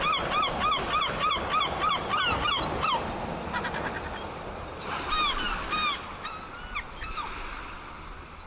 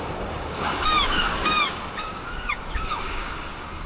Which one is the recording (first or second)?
first